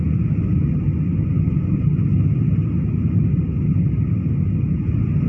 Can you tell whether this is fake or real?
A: real